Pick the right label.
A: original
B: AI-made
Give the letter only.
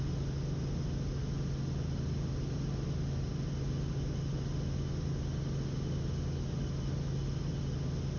A